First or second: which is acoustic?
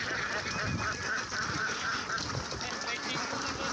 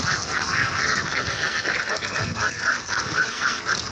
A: first